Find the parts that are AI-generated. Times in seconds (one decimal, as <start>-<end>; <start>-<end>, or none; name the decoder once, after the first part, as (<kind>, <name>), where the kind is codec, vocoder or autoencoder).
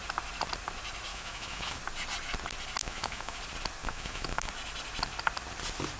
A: 1.1-1.8 (autoencoder, DAC-VAE); 2.8-3.4; 3.8-4.5